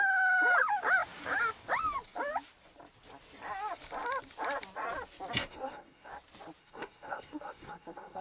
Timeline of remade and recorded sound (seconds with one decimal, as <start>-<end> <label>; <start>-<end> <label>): 0.0-5.4 recorded; 5.4-6.1 remade; 6.1-6.6 recorded; 6.6-8.2 remade